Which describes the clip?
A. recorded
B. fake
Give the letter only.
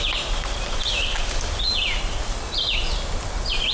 A